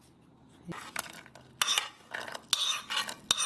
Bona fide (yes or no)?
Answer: yes